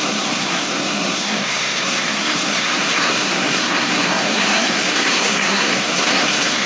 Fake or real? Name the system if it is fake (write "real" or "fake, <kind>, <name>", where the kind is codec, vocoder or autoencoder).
fake, codec, SNAC